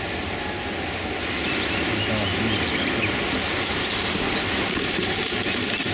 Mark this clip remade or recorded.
recorded